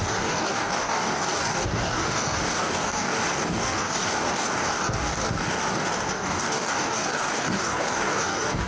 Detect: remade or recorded remade